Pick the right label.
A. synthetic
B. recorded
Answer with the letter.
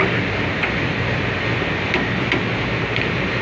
B